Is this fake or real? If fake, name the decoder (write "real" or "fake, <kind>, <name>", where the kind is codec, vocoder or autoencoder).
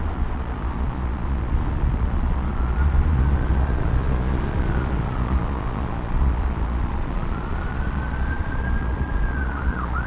fake, vocoder, Vocos